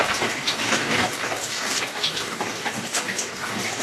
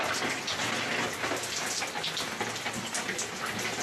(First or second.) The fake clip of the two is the first